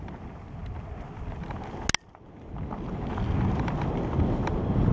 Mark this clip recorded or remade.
recorded